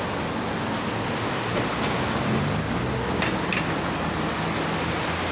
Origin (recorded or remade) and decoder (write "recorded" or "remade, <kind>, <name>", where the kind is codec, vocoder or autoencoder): recorded